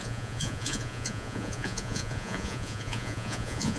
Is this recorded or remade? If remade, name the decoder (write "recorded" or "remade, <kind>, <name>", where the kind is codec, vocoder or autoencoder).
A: remade, vocoder, Vocos